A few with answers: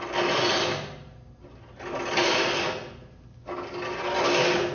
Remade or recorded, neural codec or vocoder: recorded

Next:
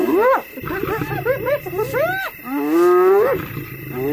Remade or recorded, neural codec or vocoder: recorded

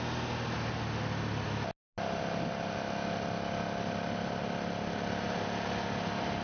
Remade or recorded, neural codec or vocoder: recorded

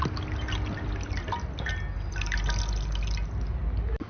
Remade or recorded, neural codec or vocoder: recorded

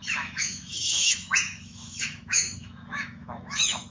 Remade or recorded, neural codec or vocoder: remade, autoencoder, DAC-VAE